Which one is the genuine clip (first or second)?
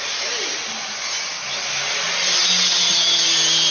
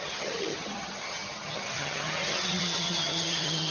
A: first